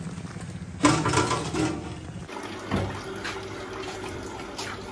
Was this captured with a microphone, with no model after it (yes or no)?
yes